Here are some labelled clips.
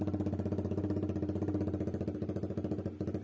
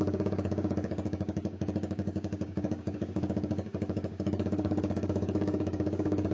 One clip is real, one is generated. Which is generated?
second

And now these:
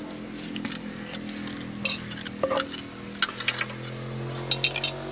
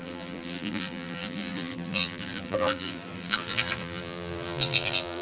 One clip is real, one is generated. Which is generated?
second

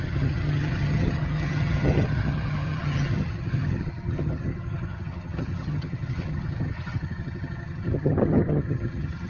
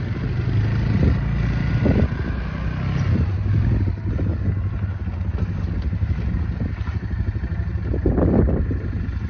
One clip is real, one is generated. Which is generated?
first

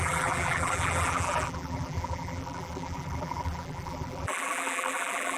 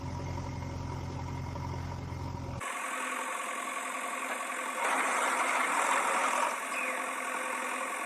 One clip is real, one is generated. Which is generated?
first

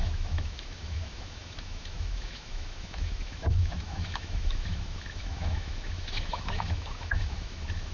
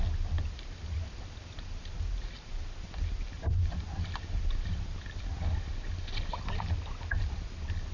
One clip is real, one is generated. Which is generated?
first